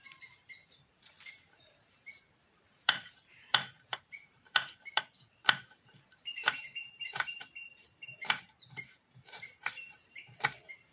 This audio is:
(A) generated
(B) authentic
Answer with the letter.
A